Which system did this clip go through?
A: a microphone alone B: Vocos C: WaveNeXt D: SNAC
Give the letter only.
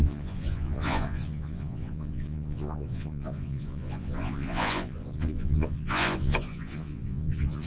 B